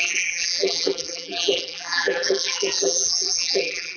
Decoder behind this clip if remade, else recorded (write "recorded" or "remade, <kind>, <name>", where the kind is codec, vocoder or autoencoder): remade, vocoder, BigVGAN v2